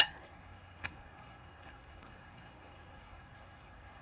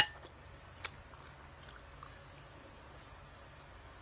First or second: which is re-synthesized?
first